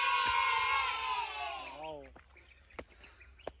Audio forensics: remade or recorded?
recorded